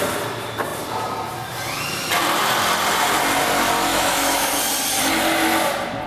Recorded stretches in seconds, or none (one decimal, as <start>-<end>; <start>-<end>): 0.0-3.9; 4.6-6.1